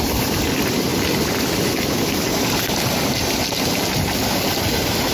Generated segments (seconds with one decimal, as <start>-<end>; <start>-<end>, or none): none